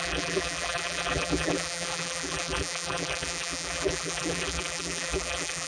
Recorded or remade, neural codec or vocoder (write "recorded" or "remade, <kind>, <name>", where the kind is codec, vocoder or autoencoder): remade, vocoder, BigVGAN v2